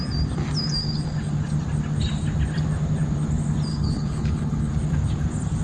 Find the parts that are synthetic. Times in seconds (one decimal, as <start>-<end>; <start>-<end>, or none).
3.7-4.7